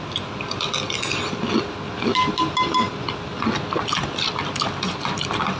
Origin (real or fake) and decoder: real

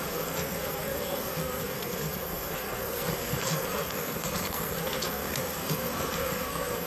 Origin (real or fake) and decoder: fake, codec, SNAC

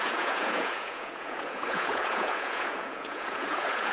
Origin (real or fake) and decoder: fake, vocoder, Vocos